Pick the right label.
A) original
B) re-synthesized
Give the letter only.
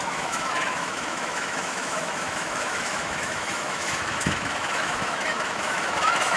B